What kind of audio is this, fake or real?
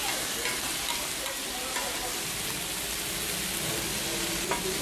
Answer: real